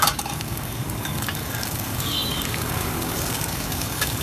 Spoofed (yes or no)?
yes